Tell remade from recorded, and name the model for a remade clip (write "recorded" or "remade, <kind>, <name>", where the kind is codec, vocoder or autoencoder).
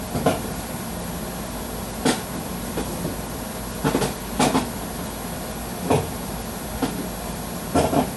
recorded